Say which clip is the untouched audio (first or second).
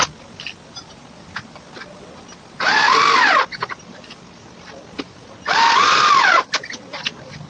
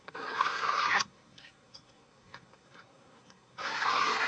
first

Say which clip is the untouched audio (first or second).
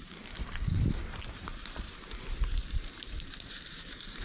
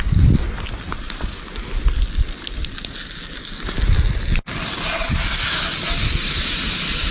second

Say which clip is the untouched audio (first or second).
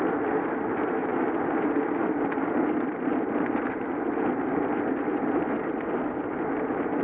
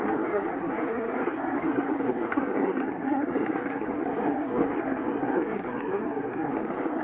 first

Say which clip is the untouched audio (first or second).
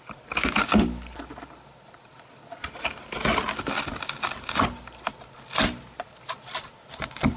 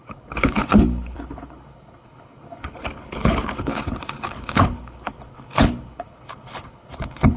first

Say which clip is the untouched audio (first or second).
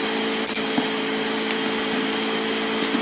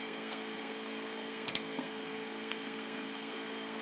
first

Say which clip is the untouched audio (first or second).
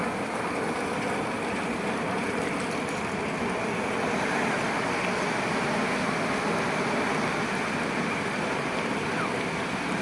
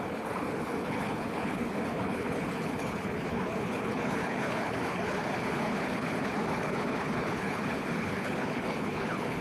first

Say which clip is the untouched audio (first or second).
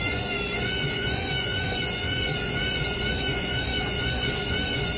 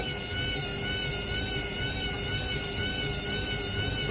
second